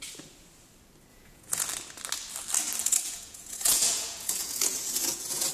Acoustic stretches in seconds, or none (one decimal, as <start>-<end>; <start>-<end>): 0.0-1.1; 1.6-2.8